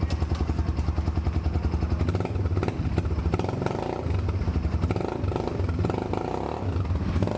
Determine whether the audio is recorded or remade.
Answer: recorded